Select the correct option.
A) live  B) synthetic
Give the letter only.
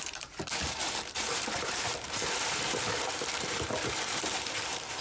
B